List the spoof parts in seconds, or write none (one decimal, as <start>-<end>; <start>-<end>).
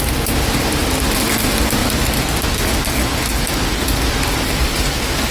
none